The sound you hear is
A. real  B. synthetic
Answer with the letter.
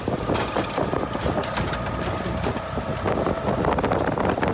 A